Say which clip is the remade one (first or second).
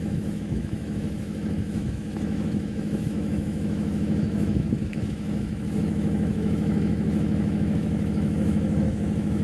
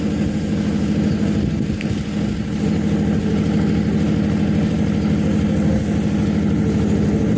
first